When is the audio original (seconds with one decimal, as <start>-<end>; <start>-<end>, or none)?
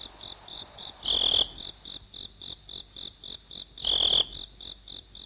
0.0-0.5; 1.0-5.3